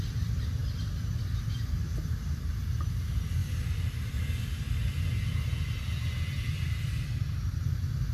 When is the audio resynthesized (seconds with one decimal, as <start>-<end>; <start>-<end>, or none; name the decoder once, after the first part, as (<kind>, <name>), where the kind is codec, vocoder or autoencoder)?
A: 0.6-1.5 (vocoder, BigVGAN v2); 3.4-4.2